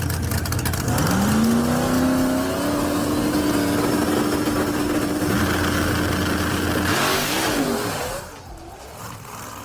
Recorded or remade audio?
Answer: recorded